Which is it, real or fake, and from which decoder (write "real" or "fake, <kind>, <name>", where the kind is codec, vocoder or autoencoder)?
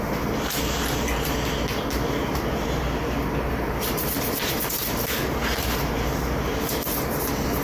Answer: fake, vocoder, BigVGAN v2